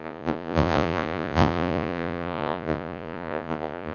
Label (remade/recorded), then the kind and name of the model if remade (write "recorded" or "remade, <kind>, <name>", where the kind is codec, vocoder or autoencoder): remade, vocoder, Vocos